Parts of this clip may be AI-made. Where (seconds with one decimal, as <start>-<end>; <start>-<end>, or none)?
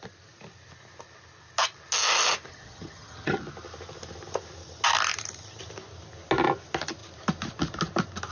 2.5-3.4